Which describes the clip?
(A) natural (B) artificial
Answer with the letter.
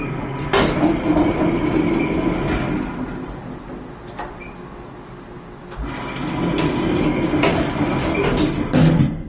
A